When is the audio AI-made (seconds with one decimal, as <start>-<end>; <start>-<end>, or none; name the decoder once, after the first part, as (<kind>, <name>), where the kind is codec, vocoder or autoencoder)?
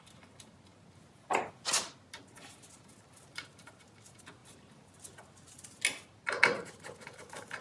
none